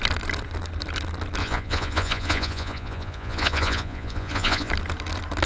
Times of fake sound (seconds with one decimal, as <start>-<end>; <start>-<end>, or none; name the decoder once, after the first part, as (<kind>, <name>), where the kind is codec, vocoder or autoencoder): 1.4-4.7 (vocoder, Vocos)